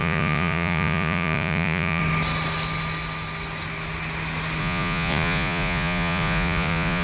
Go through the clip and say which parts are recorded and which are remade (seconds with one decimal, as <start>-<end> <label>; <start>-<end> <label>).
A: 0.0-2.0 remade; 2.0-4.6 recorded; 4.6-7.0 remade